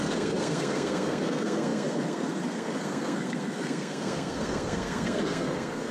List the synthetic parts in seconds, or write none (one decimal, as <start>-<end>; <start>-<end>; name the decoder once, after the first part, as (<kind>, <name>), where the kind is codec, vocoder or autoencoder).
0.0-5.9 (codec, SNAC)